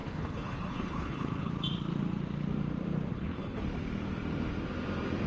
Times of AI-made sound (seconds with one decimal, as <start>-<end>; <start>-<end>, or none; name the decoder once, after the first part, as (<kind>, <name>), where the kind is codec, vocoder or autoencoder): 0.0-1.5 (codec, HILCodec); 3.1-3.6